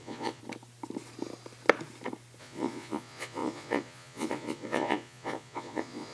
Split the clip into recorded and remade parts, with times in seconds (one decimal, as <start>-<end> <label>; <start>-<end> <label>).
0.0-0.4 remade; 0.4-2.4 recorded; 2.4-6.1 remade